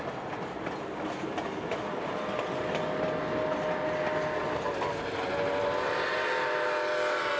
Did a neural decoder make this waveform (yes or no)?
no